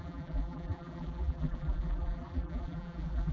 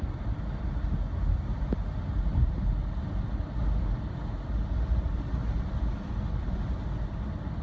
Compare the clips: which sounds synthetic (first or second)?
first